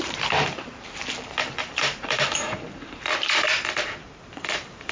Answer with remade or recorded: remade